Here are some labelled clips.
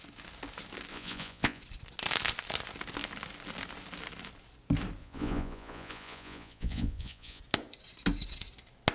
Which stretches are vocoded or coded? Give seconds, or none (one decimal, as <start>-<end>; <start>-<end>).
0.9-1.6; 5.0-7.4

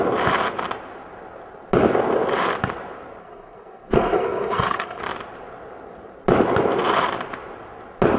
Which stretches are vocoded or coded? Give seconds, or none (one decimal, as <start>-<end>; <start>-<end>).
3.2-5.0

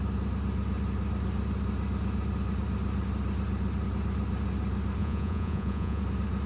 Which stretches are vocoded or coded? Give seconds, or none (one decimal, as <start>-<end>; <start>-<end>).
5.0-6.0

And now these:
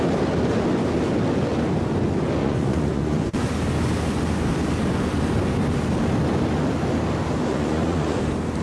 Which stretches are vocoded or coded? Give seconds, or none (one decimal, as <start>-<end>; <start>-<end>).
2.4-3.5; 7.5-8.2